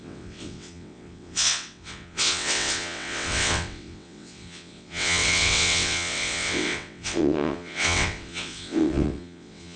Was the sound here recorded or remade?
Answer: remade